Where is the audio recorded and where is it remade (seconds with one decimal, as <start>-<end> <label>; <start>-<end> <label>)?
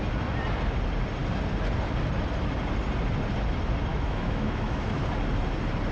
0.0-3.9 recorded; 3.9-5.0 remade; 5.0-5.9 recorded